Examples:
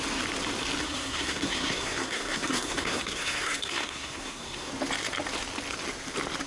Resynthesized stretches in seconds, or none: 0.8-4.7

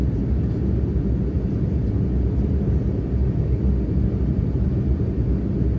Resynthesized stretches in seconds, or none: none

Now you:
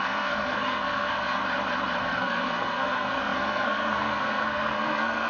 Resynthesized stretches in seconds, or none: 0.0-1.4; 2.0-5.3

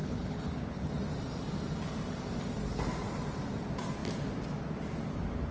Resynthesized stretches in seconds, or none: 0.0-0.9

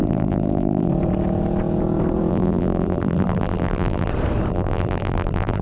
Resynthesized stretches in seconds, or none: 0.0-0.9; 2.3-4.1; 4.5-5.6

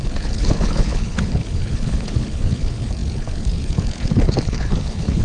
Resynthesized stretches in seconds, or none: 0.0-5.2

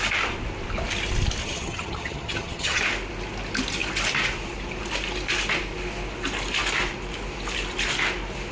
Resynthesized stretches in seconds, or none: 1.4-2.8